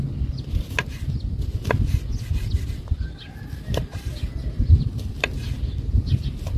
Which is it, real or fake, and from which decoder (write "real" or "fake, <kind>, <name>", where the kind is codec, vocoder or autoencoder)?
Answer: real